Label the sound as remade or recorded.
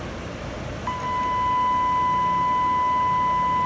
recorded